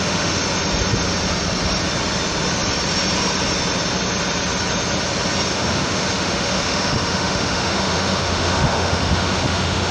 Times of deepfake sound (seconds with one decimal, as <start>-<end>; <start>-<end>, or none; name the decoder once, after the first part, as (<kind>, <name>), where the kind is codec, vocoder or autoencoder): 0.0-0.4 (autoencoder, DAC-VAE); 5.5-9.9